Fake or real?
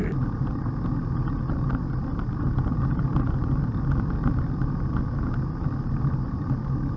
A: real